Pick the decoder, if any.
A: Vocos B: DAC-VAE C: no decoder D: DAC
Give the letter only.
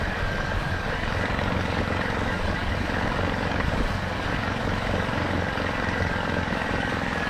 D